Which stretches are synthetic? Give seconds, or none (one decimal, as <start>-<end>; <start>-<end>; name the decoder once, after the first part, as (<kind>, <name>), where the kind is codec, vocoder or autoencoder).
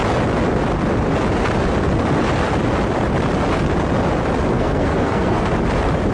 4.5-5.4 (codec, SNAC)